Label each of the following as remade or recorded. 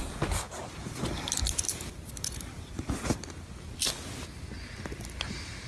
recorded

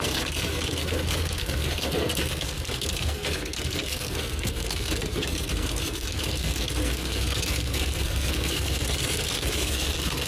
remade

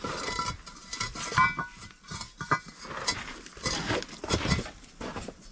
recorded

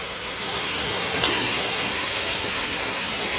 remade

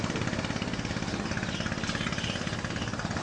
recorded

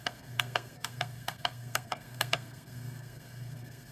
remade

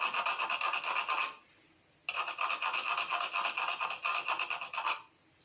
recorded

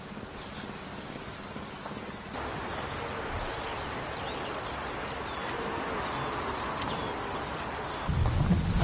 recorded